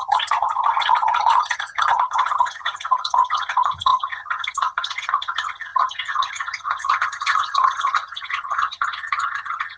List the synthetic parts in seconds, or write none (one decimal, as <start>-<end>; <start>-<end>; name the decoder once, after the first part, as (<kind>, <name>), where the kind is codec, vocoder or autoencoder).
0.0-9.8 (vocoder, HiFi-GAN)